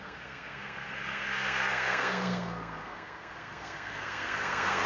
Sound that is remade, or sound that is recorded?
remade